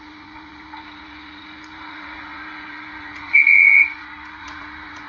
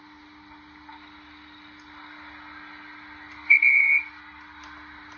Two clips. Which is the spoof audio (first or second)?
first